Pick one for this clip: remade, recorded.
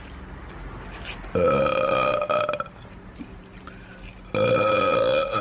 recorded